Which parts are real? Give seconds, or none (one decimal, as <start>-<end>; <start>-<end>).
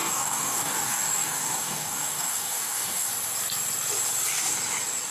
3.1-5.1